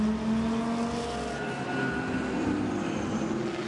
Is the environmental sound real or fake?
real